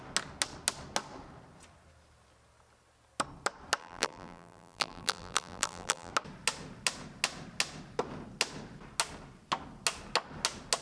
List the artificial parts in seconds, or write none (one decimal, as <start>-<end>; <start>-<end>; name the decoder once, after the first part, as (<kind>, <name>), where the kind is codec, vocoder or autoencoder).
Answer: 3.8-6.1 (vocoder, BigVGAN v2)